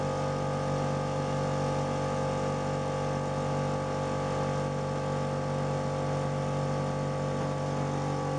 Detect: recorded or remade recorded